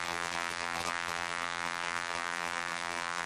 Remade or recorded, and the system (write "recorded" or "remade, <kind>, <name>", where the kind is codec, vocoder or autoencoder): remade, vocoder, BigVGAN v2